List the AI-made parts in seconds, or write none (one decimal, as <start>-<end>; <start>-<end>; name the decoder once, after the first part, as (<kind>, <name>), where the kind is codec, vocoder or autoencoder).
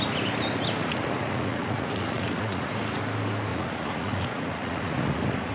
0.8-2.7 (vocoder, Vocos); 3.5-5.5